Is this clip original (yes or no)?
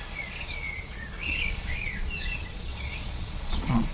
no